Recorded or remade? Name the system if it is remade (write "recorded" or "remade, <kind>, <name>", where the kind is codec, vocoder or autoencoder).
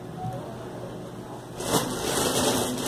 recorded